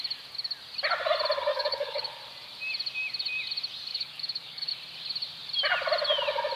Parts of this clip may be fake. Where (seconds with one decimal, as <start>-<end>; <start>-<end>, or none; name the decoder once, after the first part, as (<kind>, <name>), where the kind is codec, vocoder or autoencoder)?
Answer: 1.5-2.2 (codec, DAC); 3.9-4.7